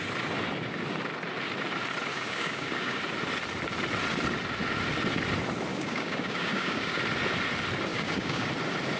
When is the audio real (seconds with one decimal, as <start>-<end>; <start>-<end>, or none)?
0.0-2.1; 3.0-5.7; 7.0-7.9; 8.5-9.0